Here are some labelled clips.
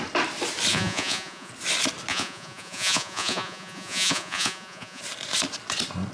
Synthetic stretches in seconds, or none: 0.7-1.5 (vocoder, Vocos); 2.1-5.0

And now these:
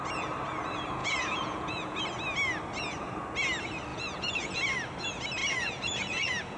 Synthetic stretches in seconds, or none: 1.0-2.0 (vocoder, Vocos); 3.9-4.6; 5.4-6.6

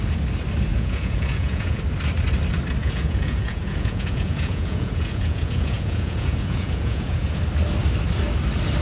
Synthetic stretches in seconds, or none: 0.7-1.8 (vocoder, Vocos); 2.8-7.4

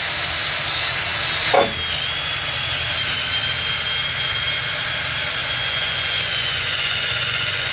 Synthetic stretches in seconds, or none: 5.4-7.7 (vocoder, Vocos)

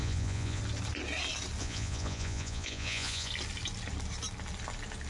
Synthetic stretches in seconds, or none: 0.0-0.6 (vocoder, Vocos); 1.6-3.3

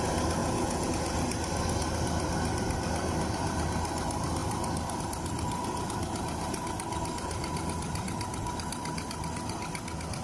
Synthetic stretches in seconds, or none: 0.4-0.9 (vocoder, Vocos)